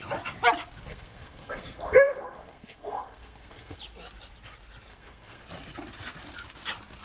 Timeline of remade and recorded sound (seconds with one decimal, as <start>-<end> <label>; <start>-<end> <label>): 0.0-0.9 recorded; 0.9-3.8 remade; 3.8-4.9 recorded; 4.9-5.4 remade; 5.4-7.0 recorded